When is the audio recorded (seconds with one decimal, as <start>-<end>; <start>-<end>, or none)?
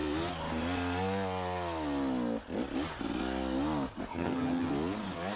0.0-4.1; 4.7-5.4